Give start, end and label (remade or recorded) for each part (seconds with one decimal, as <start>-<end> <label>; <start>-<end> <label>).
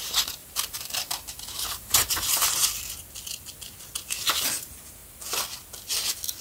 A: 0.0-0.4 recorded; 0.4-2.1 remade; 2.1-6.4 recorded